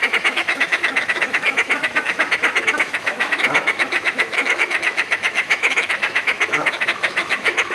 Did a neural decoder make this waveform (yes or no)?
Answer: yes